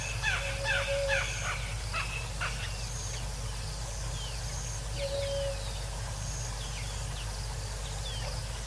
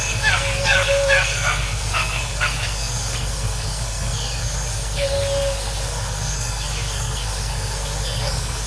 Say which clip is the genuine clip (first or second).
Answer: first